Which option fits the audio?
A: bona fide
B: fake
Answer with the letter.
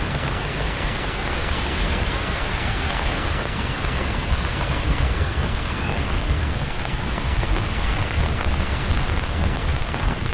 B